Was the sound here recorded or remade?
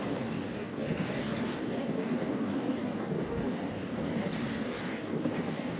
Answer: remade